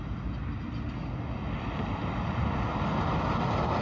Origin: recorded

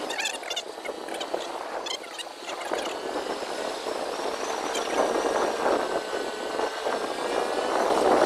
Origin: recorded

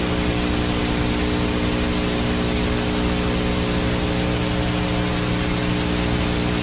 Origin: recorded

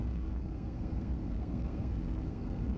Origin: remade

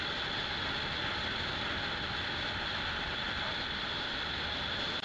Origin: recorded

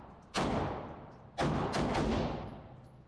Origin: recorded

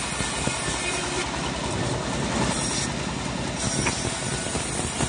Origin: recorded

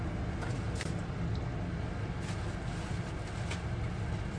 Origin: recorded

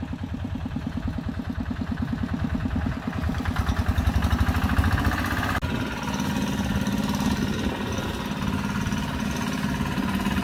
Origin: recorded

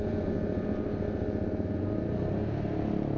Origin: recorded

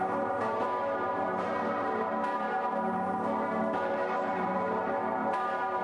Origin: remade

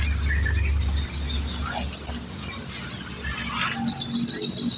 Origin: recorded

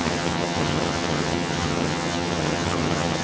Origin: remade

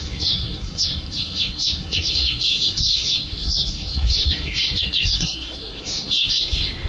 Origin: remade